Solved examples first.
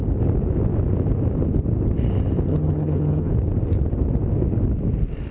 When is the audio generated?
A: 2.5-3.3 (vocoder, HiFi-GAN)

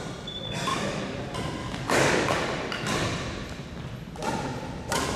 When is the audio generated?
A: 0.7-1.2 (codec, DAC); 1.6-2.3

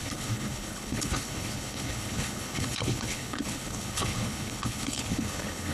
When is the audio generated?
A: 0.0-5.7 (codec, HILCodec)

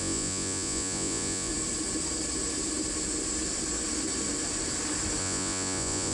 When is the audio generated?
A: 0.0-1.5 (vocoder, Vocos); 5.2-6.1